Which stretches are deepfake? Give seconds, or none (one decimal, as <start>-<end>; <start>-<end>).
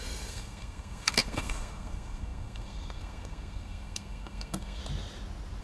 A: 0.0-4.8